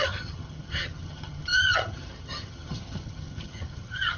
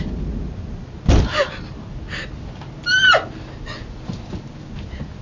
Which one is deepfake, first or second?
first